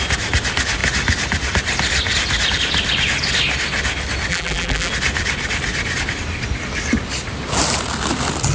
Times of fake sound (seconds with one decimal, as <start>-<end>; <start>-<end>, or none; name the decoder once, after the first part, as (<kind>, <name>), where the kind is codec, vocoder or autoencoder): 4.3-4.9 (vocoder, BigVGAN v2)